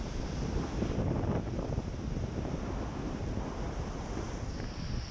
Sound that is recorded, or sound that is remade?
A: recorded